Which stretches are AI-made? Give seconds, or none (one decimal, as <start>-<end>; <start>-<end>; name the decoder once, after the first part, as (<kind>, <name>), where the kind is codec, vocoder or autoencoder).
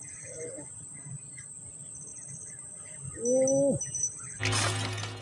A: none